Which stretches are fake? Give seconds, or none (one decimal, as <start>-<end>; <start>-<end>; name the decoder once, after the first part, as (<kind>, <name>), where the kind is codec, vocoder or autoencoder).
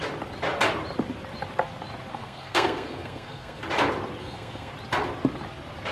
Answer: 2.1-3.6 (codec, SNAC); 4.2-4.7